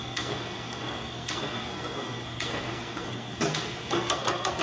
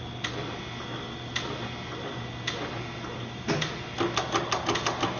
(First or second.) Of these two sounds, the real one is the second